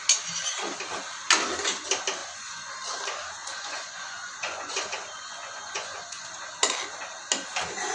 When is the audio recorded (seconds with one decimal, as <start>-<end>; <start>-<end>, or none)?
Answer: 0.0-2.2; 2.7-3.4; 6.3-7.9